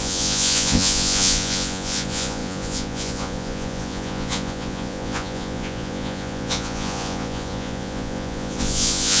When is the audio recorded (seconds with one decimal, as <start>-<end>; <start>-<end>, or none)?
none